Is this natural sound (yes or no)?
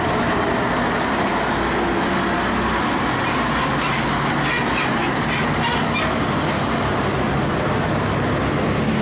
yes